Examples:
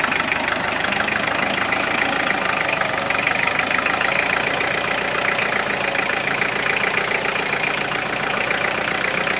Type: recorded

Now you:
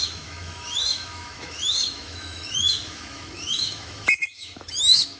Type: remade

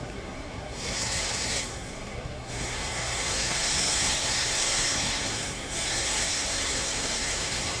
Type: remade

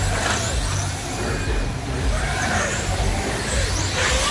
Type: recorded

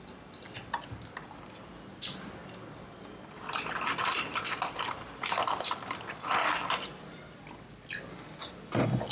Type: recorded